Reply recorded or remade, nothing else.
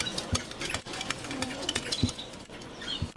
remade